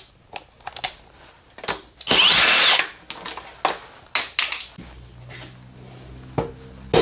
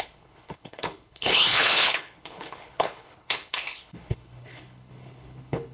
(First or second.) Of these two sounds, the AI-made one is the second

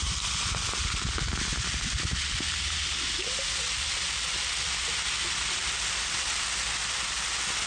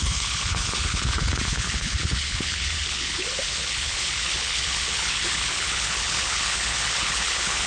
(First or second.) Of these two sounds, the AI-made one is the second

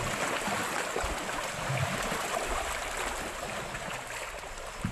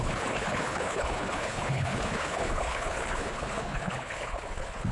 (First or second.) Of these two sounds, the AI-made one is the second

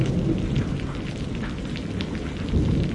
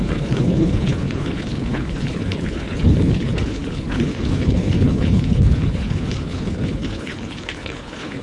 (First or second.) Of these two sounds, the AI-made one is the second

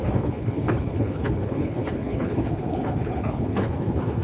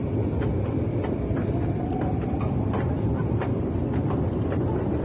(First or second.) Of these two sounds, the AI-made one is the first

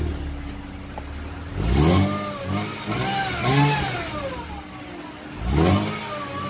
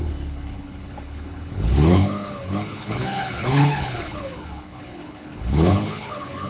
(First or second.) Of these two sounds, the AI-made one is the second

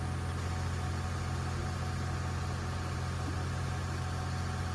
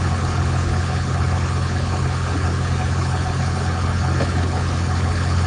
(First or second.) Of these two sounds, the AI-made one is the second